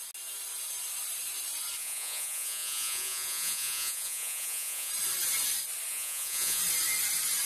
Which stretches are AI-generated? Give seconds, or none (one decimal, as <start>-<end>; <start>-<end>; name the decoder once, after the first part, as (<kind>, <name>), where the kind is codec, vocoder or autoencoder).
1.8-4.9 (vocoder, Vocos); 5.9-6.6

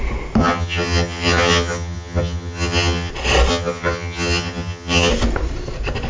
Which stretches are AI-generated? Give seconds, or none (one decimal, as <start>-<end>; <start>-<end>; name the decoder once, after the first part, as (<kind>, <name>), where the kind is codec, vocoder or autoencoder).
0.4-3.1 (vocoder, HiFi-GAN); 3.5-5.1

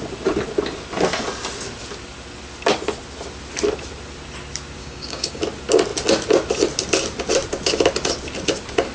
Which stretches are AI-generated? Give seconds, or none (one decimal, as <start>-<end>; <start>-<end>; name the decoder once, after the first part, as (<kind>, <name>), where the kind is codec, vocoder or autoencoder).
4.8-5.4 (codec, DAC)

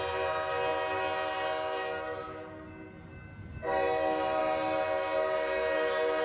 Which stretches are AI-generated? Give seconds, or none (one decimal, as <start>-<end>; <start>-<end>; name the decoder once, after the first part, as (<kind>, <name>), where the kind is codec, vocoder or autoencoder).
none

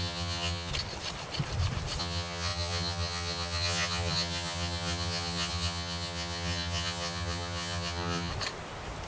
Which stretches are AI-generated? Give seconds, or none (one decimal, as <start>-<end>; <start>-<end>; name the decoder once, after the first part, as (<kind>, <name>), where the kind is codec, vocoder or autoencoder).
0.0-0.7 (vocoder, HiFi-GAN); 2.0-8.3